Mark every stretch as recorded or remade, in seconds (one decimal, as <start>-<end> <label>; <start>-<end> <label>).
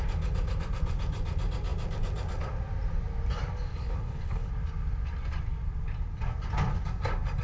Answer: 0.0-3.7 recorded; 3.7-4.5 remade; 4.5-7.4 recorded